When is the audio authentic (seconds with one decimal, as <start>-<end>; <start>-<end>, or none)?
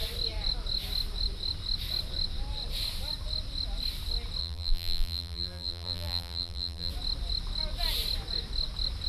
0.0-4.4; 6.9-9.1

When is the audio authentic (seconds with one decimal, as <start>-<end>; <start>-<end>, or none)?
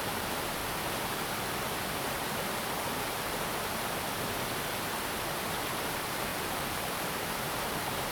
0.6-5.5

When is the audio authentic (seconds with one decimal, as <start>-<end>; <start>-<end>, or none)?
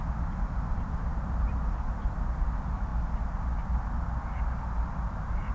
2.9-5.0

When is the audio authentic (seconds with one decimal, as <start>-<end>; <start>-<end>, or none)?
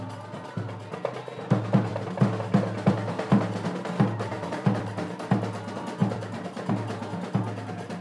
0.0-4.3; 4.9-6.0; 6.7-8.0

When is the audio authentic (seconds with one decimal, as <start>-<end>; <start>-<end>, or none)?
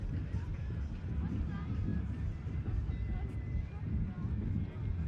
0.0-5.1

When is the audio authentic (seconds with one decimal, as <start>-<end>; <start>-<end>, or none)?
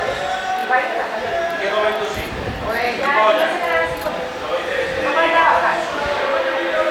0.0-0.6; 4.1-6.9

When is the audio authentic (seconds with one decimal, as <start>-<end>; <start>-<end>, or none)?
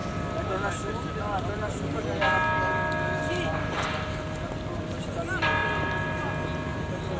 0.0-5.6; 6.3-6.7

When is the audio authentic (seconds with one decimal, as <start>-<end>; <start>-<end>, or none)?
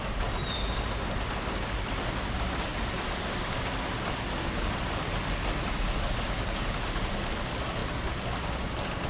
0.0-2.7; 5.5-9.1